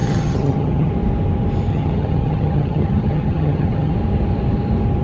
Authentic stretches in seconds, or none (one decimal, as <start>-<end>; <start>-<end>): 0.9-1.7; 3.9-5.0

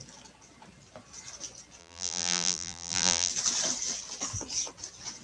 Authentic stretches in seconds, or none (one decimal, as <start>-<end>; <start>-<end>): 0.0-1.8; 3.3-5.2